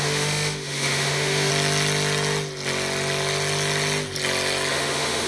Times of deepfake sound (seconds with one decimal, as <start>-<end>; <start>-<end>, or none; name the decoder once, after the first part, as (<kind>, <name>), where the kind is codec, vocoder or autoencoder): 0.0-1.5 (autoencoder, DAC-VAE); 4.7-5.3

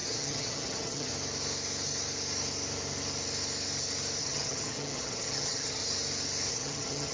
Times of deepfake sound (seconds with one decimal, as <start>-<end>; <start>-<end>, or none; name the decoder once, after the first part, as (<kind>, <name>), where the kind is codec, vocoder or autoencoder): 0.0-1.1 (vocoder, HiFi-GAN); 4.2-5.8; 6.5-7.1

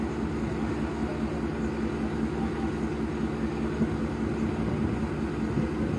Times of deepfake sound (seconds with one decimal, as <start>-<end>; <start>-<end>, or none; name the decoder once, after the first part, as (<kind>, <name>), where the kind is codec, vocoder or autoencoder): none

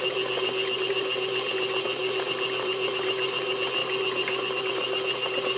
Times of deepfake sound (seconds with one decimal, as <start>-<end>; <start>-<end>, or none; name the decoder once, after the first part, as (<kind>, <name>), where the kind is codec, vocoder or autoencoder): none

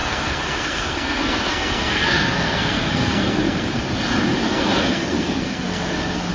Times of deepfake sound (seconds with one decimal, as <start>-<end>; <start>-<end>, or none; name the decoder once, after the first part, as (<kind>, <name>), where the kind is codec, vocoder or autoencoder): 0.0-3.8 (codec, SNAC); 4.4-6.3

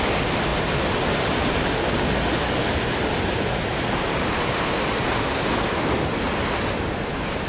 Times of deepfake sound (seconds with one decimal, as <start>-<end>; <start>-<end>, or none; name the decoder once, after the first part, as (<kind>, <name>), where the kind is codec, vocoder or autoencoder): none

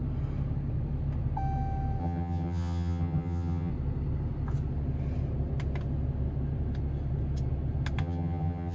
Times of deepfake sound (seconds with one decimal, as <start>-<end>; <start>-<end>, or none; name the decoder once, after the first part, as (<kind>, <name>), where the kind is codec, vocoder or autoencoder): 2.0-3.7 (vocoder, HiFi-GAN); 8.0-8.7

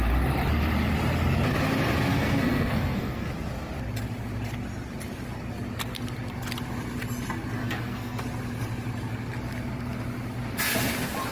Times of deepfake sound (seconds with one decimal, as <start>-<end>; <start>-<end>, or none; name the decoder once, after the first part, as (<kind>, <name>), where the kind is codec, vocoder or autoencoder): 2.1-3.3 (codec, SNAC); 7.6-8.2